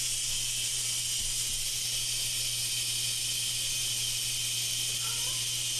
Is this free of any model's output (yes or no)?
yes